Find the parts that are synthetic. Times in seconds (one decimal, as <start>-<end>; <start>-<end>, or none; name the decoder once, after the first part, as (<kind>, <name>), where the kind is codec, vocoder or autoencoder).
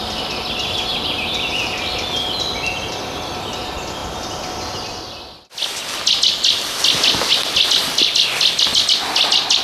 none